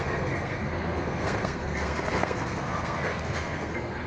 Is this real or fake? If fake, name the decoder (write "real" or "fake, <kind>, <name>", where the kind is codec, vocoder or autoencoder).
fake, codec, SNAC